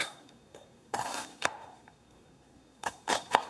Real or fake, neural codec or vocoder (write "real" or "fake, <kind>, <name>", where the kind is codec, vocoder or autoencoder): fake, codec, SNAC